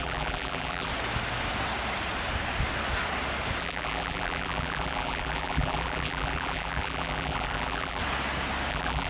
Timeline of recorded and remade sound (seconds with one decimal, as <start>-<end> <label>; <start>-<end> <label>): 0.0-0.9 remade; 0.9-3.6 recorded; 3.6-8.0 remade; 8.0-8.7 recorded; 8.7-9.1 remade